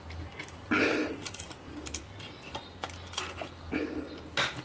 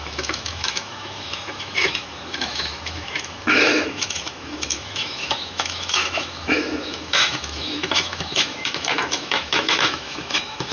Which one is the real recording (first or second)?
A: first